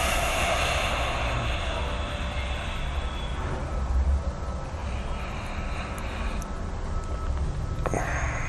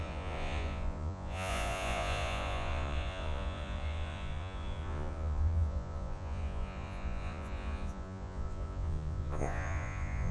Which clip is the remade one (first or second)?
second